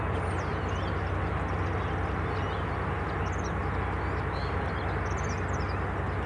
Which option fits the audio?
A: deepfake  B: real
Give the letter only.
B